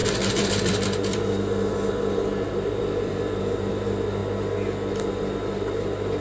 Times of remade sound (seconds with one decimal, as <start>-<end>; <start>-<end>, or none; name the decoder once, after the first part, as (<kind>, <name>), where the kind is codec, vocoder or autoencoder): 0.0-4.2 (vocoder, BigVGAN v2); 4.9-6.2